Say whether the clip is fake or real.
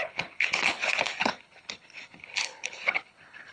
fake